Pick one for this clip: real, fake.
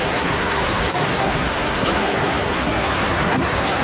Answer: fake